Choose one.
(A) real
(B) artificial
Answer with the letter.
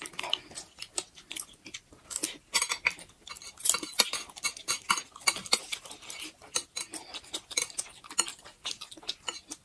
A